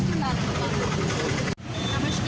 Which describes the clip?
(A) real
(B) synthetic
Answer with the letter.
B